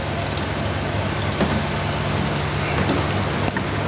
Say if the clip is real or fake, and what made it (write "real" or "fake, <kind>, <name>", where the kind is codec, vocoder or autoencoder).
real